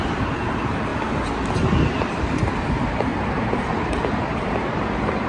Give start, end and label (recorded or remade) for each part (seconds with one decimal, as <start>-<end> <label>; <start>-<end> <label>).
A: 0.0-0.9 remade; 0.9-2.1 recorded; 2.1-5.3 remade